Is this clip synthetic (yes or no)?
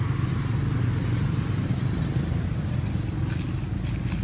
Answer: no